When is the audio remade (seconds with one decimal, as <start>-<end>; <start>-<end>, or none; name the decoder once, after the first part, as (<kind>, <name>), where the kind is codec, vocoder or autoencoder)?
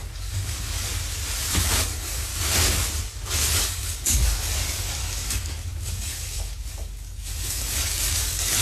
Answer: 0.0-0.9 (codec, DAC); 1.6-2.3; 3.5-8.6